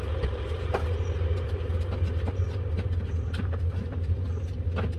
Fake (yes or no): no